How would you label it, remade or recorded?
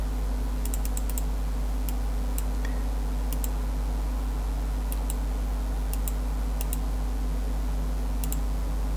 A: recorded